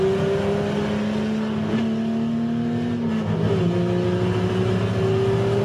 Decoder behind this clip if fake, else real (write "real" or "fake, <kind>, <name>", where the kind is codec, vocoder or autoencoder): real